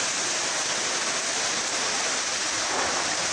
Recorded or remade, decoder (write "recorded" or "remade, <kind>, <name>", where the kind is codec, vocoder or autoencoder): recorded